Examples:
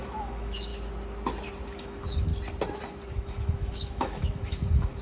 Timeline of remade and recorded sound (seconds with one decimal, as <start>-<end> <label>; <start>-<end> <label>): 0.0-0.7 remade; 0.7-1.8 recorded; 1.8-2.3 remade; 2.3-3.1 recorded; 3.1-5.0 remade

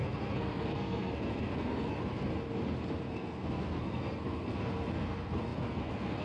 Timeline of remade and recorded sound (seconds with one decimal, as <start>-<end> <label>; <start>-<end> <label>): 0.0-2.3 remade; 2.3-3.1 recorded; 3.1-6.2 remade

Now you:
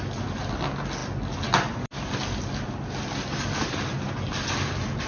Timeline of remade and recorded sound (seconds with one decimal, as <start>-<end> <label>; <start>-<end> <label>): 0.0-5.1 recorded

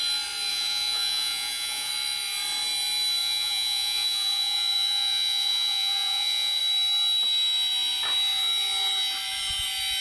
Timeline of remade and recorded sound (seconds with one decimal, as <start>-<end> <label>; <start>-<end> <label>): 0.0-0.5 recorded; 0.5-1.9 remade; 1.9-3.2 recorded; 3.2-6.6 remade; 6.6-10.0 recorded